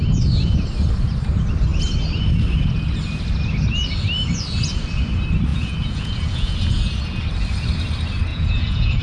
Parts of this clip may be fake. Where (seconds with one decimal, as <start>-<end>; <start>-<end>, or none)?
5.5-7.0; 8.3-9.0